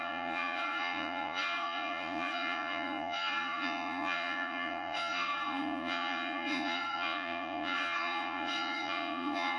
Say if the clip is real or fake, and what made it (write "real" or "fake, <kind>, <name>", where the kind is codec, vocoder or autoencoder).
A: fake, vocoder, Vocos